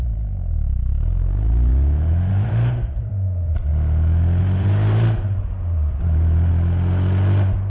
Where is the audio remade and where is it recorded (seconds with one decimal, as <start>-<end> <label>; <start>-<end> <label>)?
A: 0.0-1.7 remade; 1.7-2.3 recorded; 2.3-3.7 remade; 3.7-4.4 recorded; 4.4-6.5 remade; 6.5-7.7 recorded